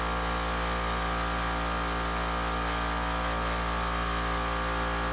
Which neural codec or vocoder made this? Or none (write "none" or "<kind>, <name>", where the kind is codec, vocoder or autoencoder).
none